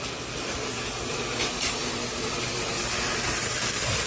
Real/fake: real